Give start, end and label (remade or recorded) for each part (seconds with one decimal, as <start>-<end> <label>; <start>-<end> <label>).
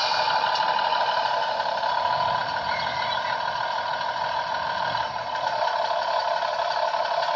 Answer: 0.0-7.4 recorded